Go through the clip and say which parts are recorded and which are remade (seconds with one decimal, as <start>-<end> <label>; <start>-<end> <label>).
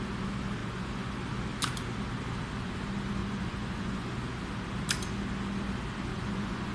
0.0-0.6 recorded; 0.6-1.1 remade; 1.1-3.2 recorded; 3.2-4.1 remade; 4.1-6.1 recorded; 6.1-6.7 remade